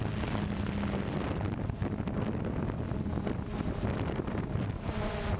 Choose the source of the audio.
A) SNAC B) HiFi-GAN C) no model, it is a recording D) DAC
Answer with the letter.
C